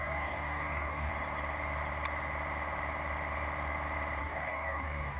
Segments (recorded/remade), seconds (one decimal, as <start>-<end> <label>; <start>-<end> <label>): 0.0-1.1 remade; 1.1-4.2 recorded; 4.2-5.2 remade